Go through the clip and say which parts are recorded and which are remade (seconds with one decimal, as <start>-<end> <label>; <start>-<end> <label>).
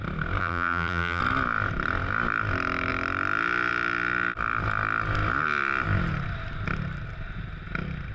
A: 0.0-0.4 recorded; 0.4-1.2 remade; 1.2-8.1 recorded